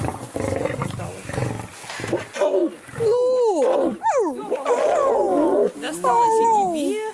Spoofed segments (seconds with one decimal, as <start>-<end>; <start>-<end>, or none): none